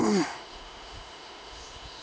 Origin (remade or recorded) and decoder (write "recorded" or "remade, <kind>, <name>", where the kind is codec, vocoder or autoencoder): remade, autoencoder, DAC-VAE